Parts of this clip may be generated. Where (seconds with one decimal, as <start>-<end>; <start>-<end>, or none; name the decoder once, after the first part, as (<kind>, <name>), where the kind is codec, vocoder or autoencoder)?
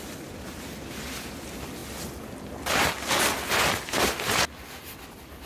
none